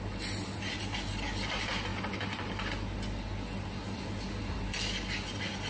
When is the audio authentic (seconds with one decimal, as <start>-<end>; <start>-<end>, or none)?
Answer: 0.0-5.7